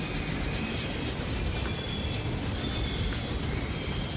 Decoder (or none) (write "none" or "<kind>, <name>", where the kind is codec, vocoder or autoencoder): none